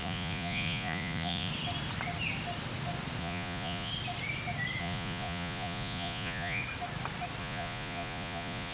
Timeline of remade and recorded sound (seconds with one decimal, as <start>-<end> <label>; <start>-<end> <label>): 0.0-1.5 remade; 1.5-3.2 recorded; 3.2-3.9 remade; 3.9-4.8 recorded; 4.8-6.6 remade; 6.6-7.4 recorded; 7.4-8.7 remade